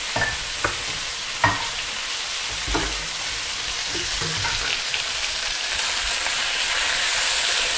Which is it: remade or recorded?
recorded